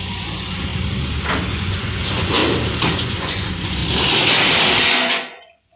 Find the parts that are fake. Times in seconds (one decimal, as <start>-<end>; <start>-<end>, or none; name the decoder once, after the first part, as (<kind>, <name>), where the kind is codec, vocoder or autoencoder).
0.0-0.7 (vocoder, Vocos); 1.5-2.4; 2.9-3.8; 4.8-5.8